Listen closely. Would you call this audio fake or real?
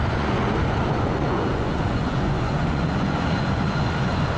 fake